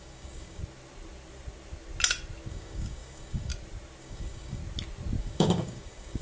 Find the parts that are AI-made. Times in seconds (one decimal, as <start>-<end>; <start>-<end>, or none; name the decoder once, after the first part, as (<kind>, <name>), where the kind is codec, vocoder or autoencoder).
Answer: 0.0-0.6 (codec, DAC); 2.5-3.5; 4.0-4.6; 5.2-6.2